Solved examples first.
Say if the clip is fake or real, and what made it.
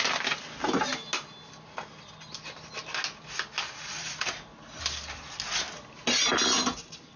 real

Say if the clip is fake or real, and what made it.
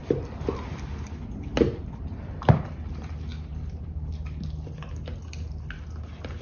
real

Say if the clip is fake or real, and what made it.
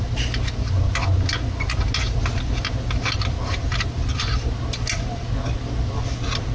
real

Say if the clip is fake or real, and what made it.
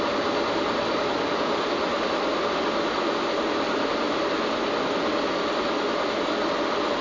real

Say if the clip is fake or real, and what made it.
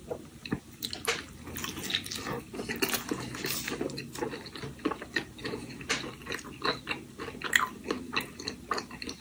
real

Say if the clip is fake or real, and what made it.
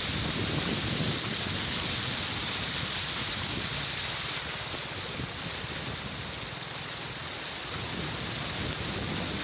real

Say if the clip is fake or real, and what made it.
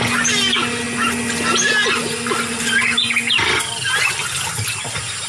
real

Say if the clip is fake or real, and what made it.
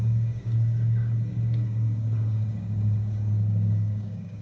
fake, codec, DAC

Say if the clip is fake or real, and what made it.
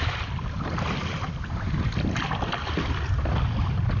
real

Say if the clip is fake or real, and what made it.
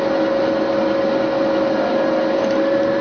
real